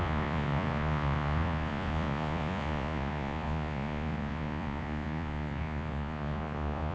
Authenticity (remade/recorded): remade